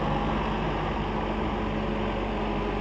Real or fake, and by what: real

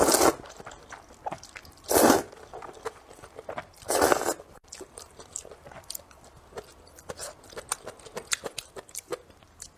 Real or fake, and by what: real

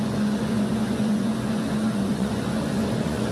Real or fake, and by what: fake, vocoder, Vocos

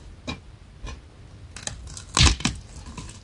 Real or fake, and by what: real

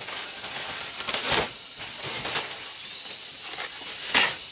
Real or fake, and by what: real